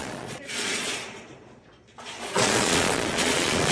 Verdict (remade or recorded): remade